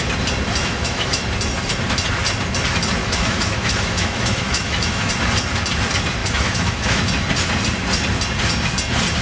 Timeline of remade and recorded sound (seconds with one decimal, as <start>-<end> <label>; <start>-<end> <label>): 0.0-0.6 recorded; 0.6-1.2 remade; 1.2-3.0 recorded; 3.0-5.1 remade; 5.1-6.2 recorded; 6.2-7.0 remade; 7.0-9.2 recorded